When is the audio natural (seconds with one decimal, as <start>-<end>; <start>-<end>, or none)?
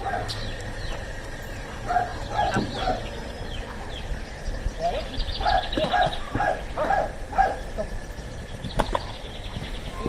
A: 0.0-10.1